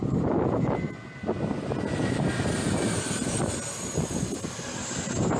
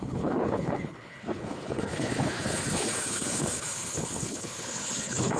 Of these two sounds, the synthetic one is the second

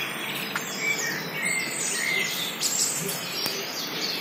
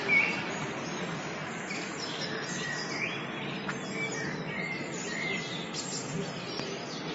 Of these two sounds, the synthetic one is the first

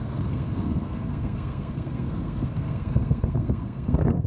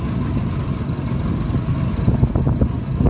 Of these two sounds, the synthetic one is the first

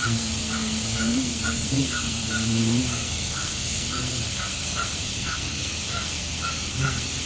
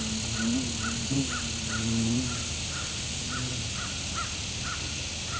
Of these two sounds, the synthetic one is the first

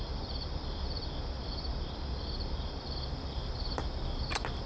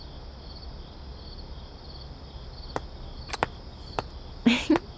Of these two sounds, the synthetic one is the first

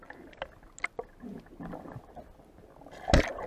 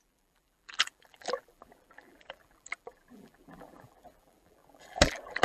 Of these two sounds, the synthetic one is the second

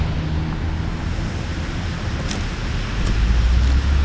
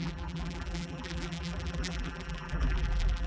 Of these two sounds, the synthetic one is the second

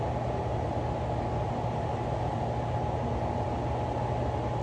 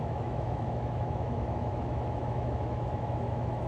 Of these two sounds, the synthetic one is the second